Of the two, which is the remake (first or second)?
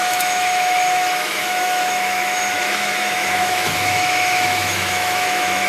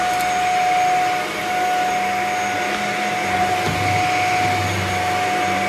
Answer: first